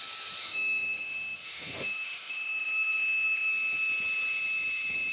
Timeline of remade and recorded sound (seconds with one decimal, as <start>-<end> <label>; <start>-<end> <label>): 0.0-0.4 recorded; 0.4-3.5 remade; 3.5-5.1 recorded

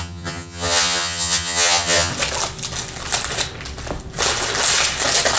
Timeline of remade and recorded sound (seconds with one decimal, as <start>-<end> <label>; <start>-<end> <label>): 0.0-2.1 remade; 2.1-5.4 recorded

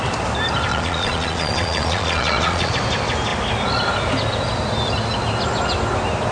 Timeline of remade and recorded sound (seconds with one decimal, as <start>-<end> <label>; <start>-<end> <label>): 0.0-0.7 recorded; 0.7-2.7 remade; 2.7-6.3 recorded

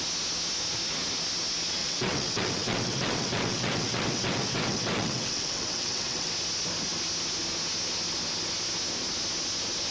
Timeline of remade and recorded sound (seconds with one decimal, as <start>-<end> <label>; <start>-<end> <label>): 0.0-1.8 recorded; 1.8-6.3 remade; 6.3-9.9 recorded